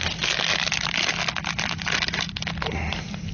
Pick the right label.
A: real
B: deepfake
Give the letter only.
A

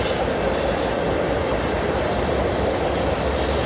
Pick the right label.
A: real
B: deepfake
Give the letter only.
A